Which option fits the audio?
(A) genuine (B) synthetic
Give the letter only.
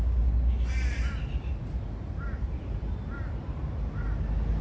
A